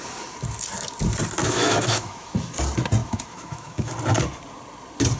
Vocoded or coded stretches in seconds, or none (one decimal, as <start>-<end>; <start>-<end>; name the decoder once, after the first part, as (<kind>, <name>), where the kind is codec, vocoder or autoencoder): 1.4-2.3 (autoencoder, DAC-VAE); 3.0-3.9